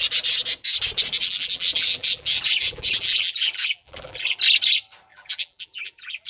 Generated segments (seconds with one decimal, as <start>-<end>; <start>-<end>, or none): 1.2-4.4; 5.1-6.3